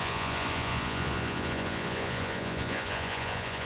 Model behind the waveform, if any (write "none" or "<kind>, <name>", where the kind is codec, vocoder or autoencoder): vocoder, Vocos